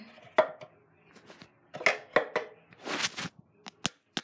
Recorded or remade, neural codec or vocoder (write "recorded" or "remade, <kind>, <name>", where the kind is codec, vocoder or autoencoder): recorded